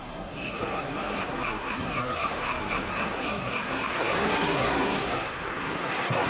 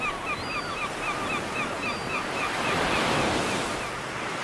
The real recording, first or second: second